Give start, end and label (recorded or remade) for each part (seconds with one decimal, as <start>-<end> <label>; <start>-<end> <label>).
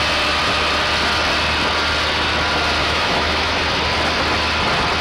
0.0-2.8 recorded; 2.8-3.6 remade; 3.6-5.0 recorded